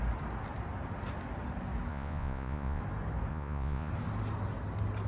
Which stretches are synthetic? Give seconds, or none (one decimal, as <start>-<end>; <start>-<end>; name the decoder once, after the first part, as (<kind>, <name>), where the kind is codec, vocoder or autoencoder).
1.9-2.8 (vocoder, Vocos); 3.3-3.9